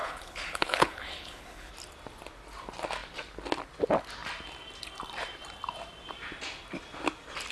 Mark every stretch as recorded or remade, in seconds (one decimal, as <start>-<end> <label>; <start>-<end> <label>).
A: 0.0-1.7 remade; 1.7-7.5 recorded